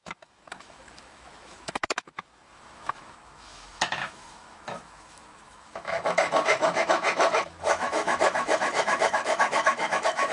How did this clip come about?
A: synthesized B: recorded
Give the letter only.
A